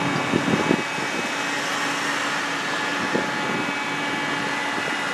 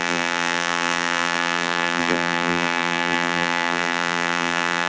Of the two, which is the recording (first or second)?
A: first